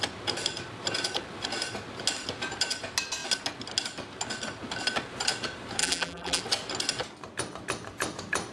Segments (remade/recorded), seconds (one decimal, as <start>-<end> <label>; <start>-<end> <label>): 0.0-5.8 recorded; 5.8-6.4 remade; 6.4-8.5 recorded